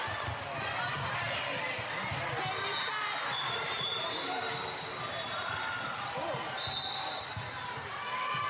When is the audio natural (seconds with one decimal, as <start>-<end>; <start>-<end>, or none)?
0.0-3.3; 4.5-5.4; 7.2-8.5